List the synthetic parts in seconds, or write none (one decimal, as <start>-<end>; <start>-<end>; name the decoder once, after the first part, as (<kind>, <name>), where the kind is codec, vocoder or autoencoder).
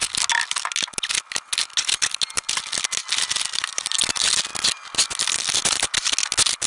none